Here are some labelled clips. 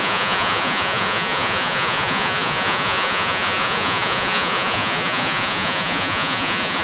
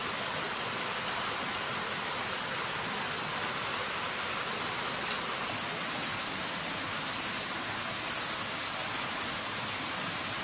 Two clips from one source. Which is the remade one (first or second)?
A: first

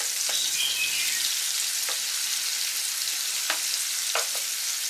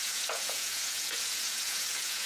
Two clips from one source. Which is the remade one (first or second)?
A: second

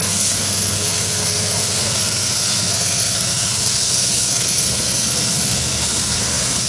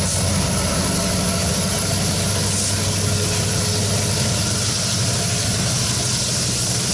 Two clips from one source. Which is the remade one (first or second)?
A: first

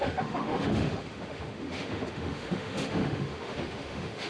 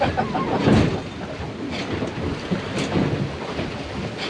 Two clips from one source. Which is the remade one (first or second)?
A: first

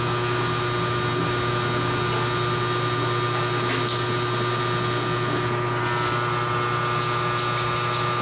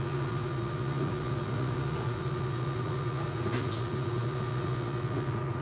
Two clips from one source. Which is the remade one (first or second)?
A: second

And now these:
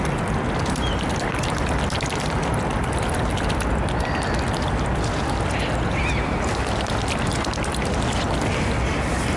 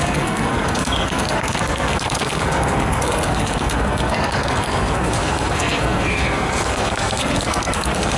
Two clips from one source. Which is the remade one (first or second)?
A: second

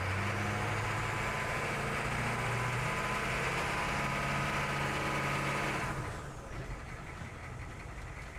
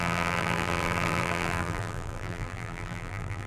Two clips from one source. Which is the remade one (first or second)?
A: second